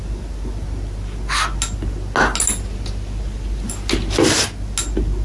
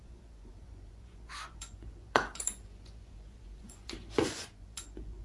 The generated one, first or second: second